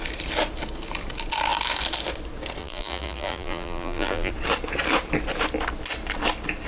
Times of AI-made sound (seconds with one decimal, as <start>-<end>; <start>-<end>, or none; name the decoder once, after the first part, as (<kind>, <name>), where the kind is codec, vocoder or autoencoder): 2.6-4.3 (vocoder, BigVGAN v2)